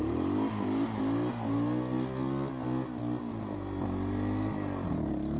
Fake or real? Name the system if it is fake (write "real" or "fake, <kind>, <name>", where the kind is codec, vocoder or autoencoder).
real